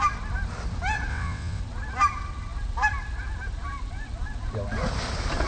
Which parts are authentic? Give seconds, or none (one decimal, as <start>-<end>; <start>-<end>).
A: 0.0-1.1; 1.6-5.5